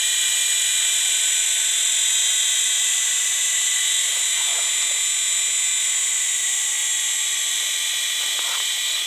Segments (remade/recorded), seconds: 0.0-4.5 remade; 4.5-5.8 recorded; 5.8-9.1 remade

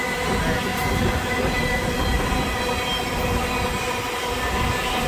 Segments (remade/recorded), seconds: 0.0-0.7 recorded; 0.7-1.9 remade; 1.9-5.1 recorded

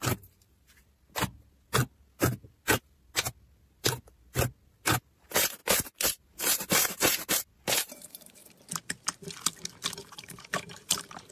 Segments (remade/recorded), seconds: 0.0-0.8 remade; 0.8-4.7 recorded; 4.7-8.4 remade; 8.4-10.1 recorded; 10.1-11.3 remade

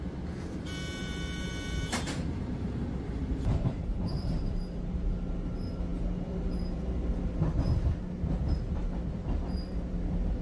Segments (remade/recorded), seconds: 0.0-1.0 recorded; 1.0-5.1 remade; 5.1-10.4 recorded

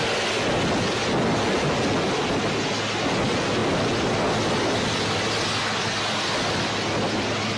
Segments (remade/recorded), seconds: 0.0-7.6 recorded

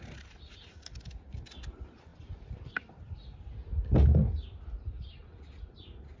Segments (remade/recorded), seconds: 0.0-6.2 recorded

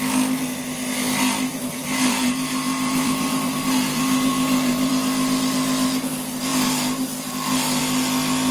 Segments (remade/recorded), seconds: 0.0-1.5 recorded; 1.5-4.9 remade; 4.9-8.5 recorded